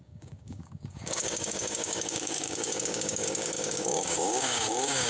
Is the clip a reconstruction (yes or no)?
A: yes